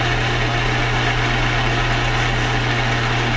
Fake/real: real